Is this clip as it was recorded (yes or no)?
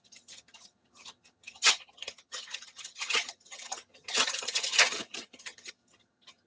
no